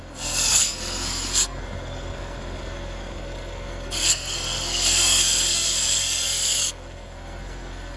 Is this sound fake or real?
fake